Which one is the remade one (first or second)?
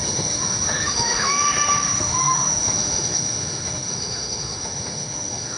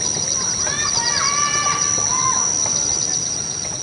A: first